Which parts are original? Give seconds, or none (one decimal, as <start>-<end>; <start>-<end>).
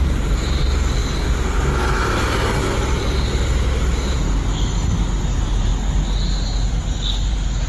1.0-5.2; 5.7-7.3